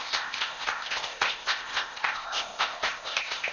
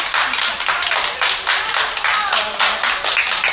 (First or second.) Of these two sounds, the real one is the second